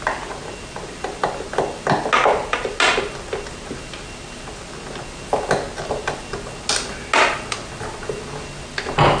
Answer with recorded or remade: recorded